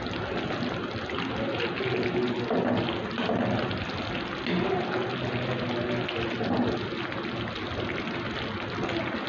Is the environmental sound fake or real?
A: real